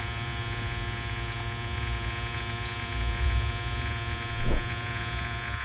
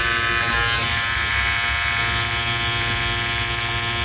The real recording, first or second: second